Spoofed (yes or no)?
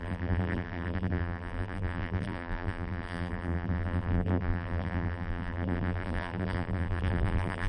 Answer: yes